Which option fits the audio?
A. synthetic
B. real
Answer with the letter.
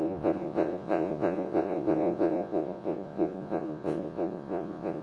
A